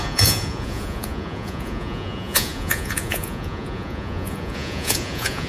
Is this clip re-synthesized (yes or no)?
yes